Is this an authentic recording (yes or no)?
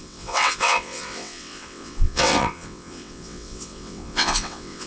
no